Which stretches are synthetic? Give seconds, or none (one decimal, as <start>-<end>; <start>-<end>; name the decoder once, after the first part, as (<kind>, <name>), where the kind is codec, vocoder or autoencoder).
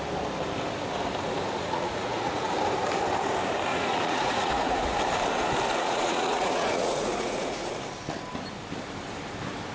1.6-2.5 (vocoder, Vocos); 3.7-5.0; 5.8-7.7